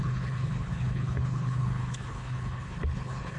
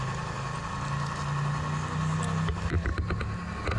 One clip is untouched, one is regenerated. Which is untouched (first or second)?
second